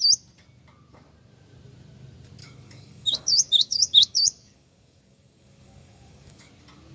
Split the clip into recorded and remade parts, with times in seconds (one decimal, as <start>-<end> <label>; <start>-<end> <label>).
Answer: 0.0-2.4 recorded; 2.4-6.5 remade; 6.5-6.9 recorded